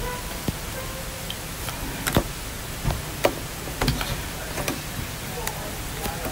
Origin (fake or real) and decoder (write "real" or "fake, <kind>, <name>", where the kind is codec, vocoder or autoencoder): real